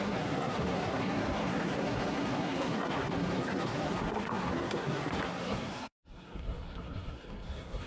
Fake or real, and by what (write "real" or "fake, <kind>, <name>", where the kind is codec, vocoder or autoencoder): fake, codec, SNAC